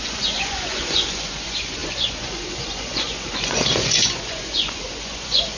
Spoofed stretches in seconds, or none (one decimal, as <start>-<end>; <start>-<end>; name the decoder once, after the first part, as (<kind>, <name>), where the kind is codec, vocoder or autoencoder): 0.0-5.6 (vocoder, Vocos)